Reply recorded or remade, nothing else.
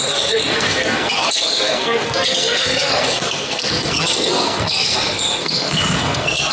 remade